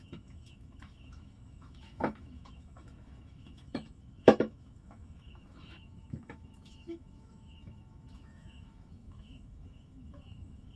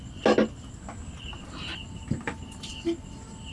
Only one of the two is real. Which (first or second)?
second